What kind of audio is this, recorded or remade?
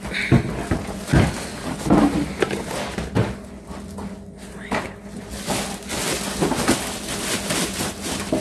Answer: recorded